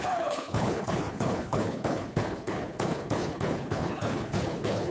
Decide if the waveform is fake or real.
fake